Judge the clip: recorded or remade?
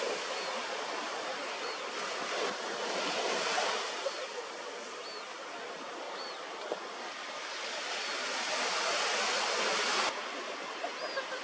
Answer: recorded